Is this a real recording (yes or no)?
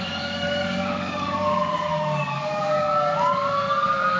no